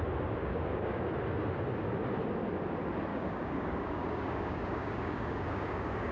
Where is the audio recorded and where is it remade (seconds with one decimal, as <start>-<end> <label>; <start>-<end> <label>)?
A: 0.0-0.4 recorded; 0.4-1.0 remade; 1.0-3.1 recorded; 3.1-6.1 remade